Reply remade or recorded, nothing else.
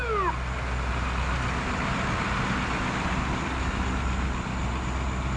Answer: recorded